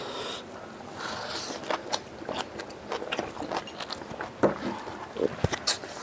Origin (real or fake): real